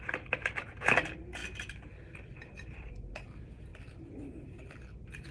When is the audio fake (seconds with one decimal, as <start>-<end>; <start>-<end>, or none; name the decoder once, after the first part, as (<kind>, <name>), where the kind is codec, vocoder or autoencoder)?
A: none